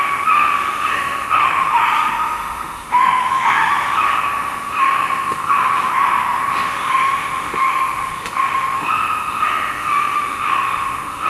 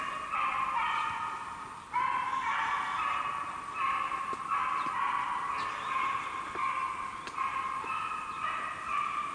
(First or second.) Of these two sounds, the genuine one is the second